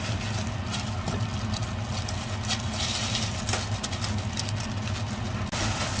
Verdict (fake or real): real